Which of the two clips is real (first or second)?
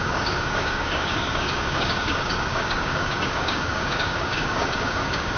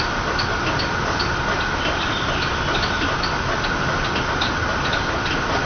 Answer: second